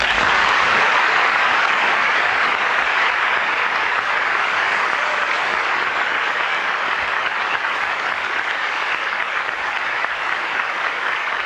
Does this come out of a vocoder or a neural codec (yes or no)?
yes